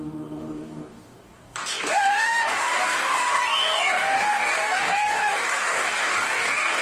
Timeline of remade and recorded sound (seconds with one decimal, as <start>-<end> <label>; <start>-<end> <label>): 0.0-6.8 remade